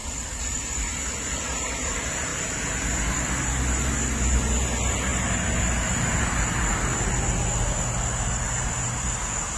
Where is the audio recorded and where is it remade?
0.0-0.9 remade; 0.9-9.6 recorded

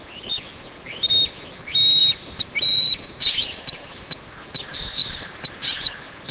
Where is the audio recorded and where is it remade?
0.0-2.0 recorded; 2.0-3.1 remade; 3.1-5.0 recorded; 5.0-5.5 remade; 5.5-6.3 recorded

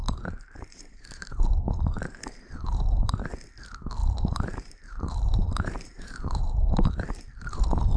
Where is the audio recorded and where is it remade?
0.0-3.3 remade; 3.3-4.0 recorded; 4.0-7.6 remade; 7.6-8.0 recorded

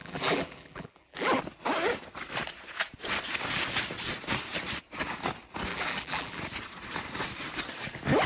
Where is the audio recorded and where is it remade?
0.0-1.4 remade; 1.4-5.7 recorded; 5.7-6.4 remade; 6.4-8.3 recorded

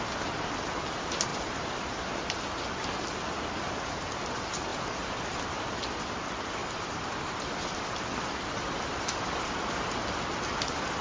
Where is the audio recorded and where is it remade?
0.0-1.3 recorded; 1.3-2.1 remade; 2.1-6.6 recorded; 6.6-7.5 remade; 7.5-11.0 recorded

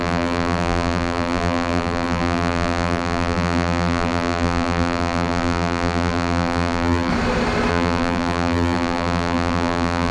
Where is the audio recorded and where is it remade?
0.0-7.1 remade; 7.1-7.7 recorded; 7.7-10.1 remade

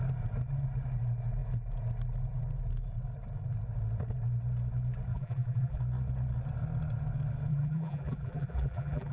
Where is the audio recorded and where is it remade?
0.0-5.1 recorded; 5.1-5.8 remade; 5.8-7.5 recorded; 7.5-9.1 remade